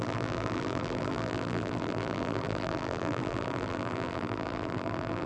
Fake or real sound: fake